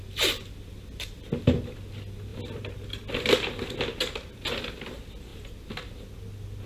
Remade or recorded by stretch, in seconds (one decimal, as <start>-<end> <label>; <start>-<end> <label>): 0.0-6.7 recorded